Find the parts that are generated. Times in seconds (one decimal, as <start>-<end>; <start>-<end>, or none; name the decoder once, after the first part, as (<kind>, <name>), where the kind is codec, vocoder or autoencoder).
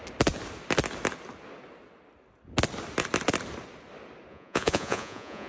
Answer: 4.3-5.5 (vocoder, Vocos)